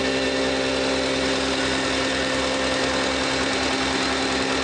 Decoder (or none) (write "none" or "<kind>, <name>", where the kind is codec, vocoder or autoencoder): none